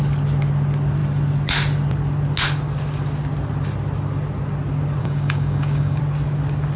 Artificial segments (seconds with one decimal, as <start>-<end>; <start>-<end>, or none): 5.0-6.0